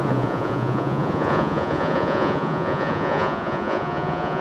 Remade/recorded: remade